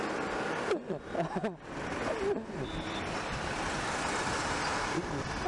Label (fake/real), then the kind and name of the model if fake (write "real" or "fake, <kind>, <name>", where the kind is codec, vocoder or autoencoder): real